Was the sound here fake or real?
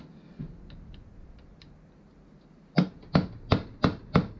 real